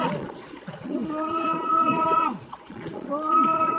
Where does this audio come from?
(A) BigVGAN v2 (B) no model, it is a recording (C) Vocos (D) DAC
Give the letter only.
C